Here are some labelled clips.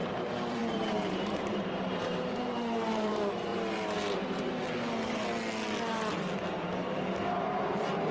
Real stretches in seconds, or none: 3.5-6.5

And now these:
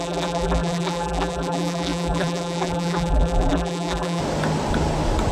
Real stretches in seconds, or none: 4.2-5.3

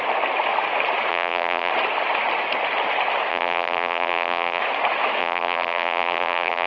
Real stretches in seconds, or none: 0.0-1.1; 1.7-3.3; 4.6-5.2